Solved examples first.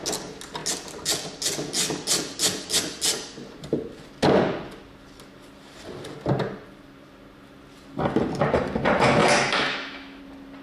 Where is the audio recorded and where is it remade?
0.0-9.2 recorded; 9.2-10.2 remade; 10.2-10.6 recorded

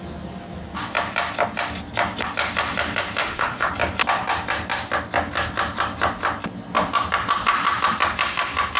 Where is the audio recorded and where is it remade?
0.0-3.2 recorded; 3.2-3.7 remade; 3.7-8.8 recorded

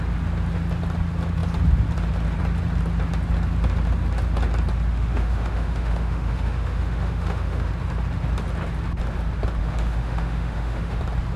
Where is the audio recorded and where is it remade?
0.0-4.9 recorded; 4.9-7.7 remade; 7.7-9.6 recorded; 9.6-11.0 remade; 11.0-11.4 recorded

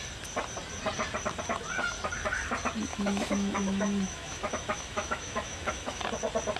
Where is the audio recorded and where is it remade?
0.0-2.9 recorded; 2.9-6.0 remade; 6.0-6.6 recorded

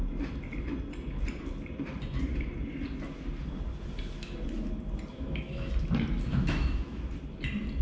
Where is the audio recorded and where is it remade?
0.0-5.1 recorded; 5.1-5.7 remade; 5.7-6.3 recorded; 6.3-7.0 remade; 7.0-7.8 recorded